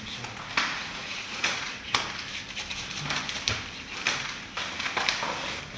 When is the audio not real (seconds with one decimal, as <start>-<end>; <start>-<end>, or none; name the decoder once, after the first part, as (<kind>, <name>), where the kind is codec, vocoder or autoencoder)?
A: 0.7-1.9 (vocoder, Vocos)